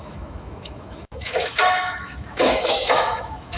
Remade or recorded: remade